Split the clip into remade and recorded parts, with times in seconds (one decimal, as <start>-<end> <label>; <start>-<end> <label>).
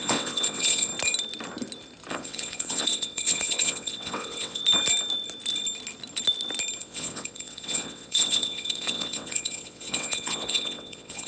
0.0-0.9 remade; 0.9-2.1 recorded; 2.1-4.6 remade; 4.6-6.8 recorded; 6.8-11.3 remade